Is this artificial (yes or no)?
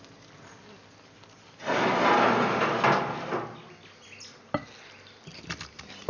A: no